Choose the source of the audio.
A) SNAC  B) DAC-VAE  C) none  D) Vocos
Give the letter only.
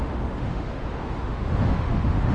B